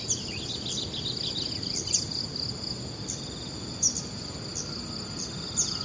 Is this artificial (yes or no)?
no